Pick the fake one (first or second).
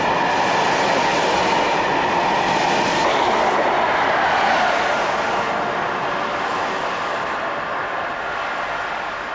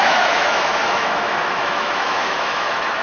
second